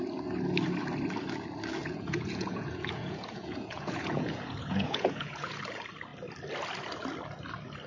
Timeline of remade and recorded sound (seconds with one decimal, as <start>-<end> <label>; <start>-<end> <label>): 0.0-1.8 recorded; 1.8-5.6 remade; 5.6-7.9 recorded